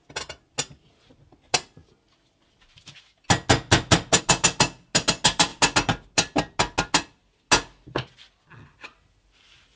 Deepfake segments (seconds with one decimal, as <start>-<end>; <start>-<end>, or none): none